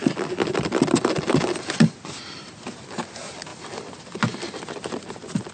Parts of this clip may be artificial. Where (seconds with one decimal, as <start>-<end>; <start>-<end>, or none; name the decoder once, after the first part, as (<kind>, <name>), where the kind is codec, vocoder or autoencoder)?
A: none